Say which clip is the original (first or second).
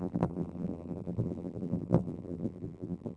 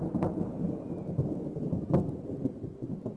second